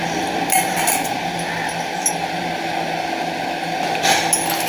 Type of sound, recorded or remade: recorded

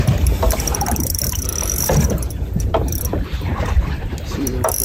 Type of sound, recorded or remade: remade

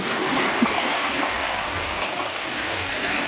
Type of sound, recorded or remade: remade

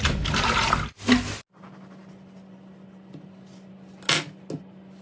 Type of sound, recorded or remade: recorded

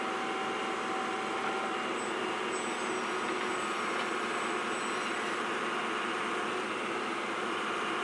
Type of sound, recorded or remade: recorded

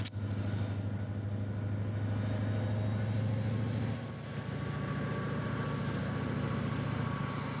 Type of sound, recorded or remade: recorded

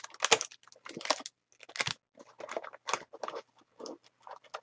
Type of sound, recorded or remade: recorded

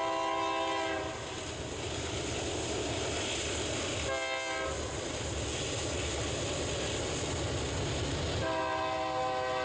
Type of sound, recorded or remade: recorded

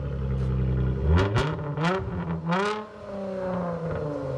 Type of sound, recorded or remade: recorded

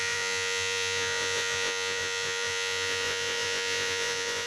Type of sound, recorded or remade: remade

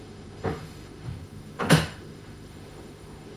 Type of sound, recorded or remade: remade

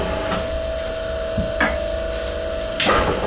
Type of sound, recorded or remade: recorded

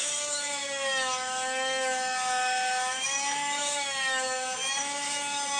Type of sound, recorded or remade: remade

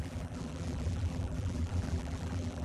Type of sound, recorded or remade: remade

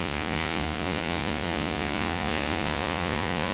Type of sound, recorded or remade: remade